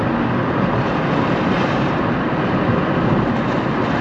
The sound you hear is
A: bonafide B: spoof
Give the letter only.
A